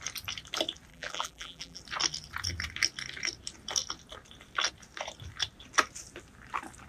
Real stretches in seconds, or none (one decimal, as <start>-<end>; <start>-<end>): 0.0-0.9; 1.8-6.9

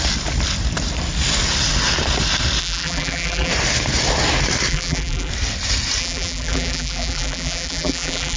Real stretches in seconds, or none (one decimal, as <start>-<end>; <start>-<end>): 0.0-2.6; 3.5-4.7; 5.3-6.0

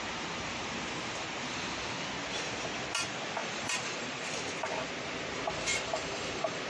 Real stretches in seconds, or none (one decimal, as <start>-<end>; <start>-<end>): 0.0-3.4; 4.3-5.7

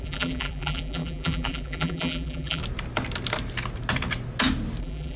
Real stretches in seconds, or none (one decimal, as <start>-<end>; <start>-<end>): 2.6-4.8

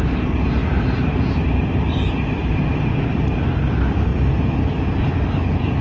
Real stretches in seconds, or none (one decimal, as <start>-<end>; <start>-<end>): 4.1-5.8

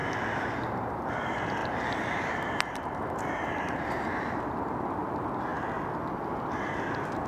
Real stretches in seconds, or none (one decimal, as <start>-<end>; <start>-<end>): 1.1-1.6; 4.7-7.3

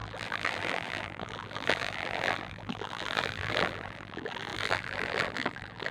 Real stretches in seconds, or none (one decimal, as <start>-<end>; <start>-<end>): none

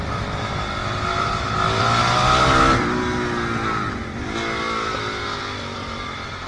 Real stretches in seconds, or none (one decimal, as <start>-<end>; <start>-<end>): 0.0-6.5